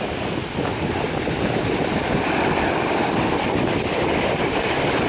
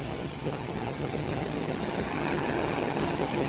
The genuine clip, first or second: first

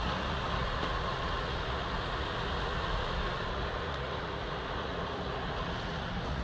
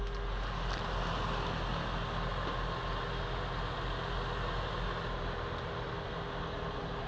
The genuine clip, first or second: second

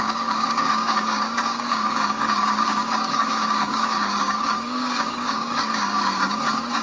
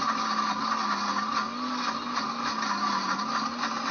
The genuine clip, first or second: second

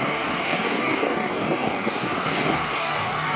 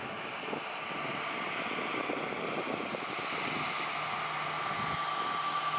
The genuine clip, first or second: second